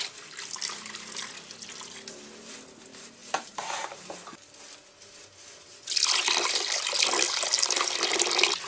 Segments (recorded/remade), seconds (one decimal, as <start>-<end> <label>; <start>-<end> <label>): 0.0-3.2 recorded; 3.2-4.6 remade; 4.6-8.7 recorded